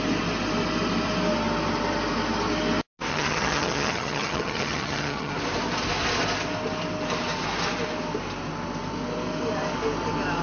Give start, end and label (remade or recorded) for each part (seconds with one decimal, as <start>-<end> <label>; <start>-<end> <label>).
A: 0.0-3.1 recorded; 3.1-5.3 remade; 5.3-10.4 recorded